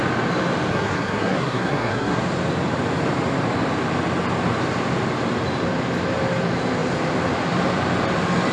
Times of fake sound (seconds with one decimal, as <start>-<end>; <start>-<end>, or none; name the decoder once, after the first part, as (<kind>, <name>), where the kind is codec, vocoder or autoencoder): 0.7-2.2 (codec, SNAC)